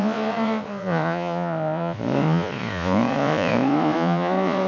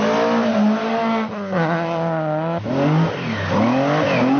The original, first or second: second